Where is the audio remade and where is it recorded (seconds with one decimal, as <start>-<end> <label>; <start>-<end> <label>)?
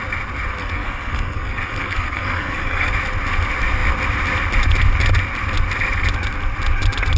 0.0-0.6 recorded; 0.6-2.9 remade; 2.9-7.2 recorded